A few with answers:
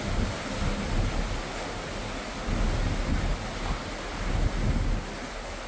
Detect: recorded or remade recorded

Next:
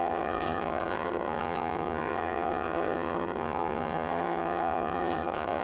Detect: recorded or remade remade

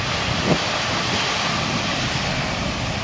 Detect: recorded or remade recorded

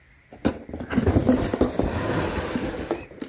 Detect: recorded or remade recorded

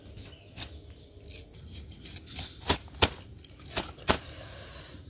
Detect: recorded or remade recorded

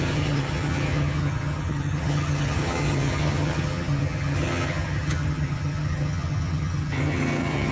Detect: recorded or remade remade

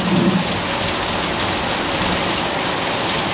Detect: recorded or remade recorded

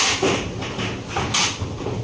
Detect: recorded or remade recorded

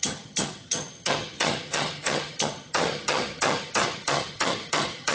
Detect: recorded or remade remade